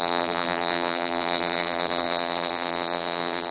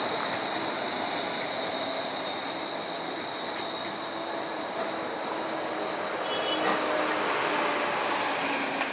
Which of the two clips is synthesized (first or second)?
first